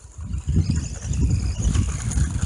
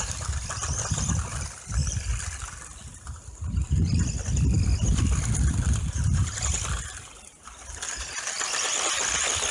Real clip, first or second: first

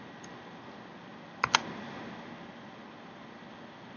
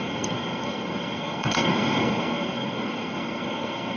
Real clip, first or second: first